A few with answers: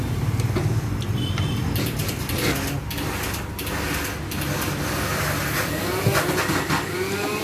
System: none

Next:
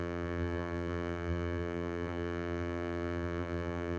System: vocoder, BigVGAN v2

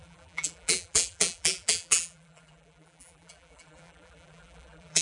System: vocoder, BigVGAN v2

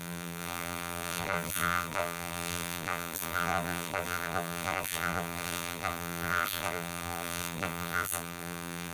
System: vocoder, BigVGAN v2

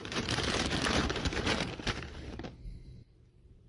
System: vocoder, BigVGAN v2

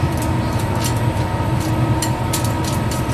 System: vocoder, BigVGAN v2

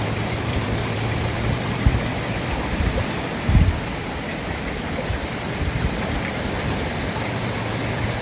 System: vocoder, BigVGAN v2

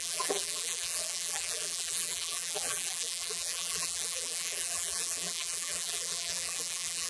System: vocoder, BigVGAN v2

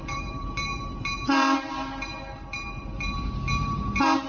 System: vocoder, BigVGAN v2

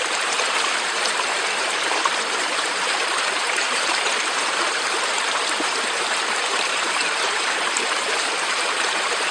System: vocoder, BigVGAN v2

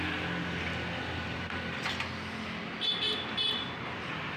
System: none